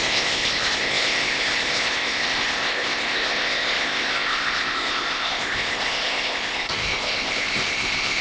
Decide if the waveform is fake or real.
fake